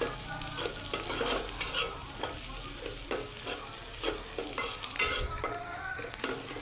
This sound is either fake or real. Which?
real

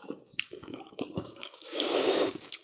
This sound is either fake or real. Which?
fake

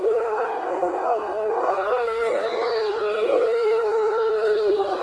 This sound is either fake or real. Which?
fake